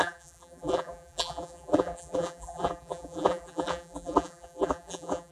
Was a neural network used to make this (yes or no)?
yes